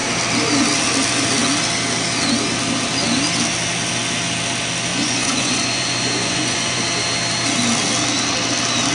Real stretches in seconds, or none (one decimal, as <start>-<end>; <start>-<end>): 0.0-4.9; 6.8-8.9